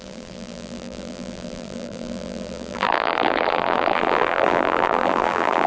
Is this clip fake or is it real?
fake